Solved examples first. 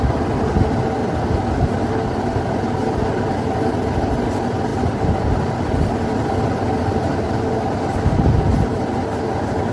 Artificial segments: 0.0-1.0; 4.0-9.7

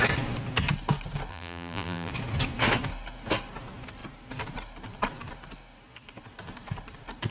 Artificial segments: 1.3-2.1

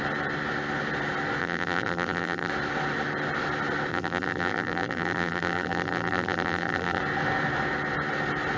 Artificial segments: 1.4-2.5; 3.9-7.0

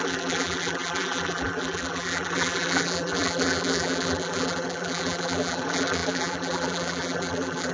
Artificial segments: 0.0-7.7

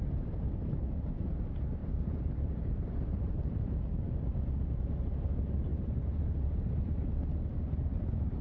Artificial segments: 1.8-4.4; 5.7-7.0